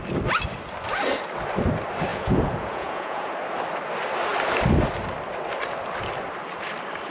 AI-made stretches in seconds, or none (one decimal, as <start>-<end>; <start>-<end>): 2.1-3.3